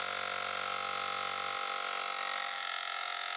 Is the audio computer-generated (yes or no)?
no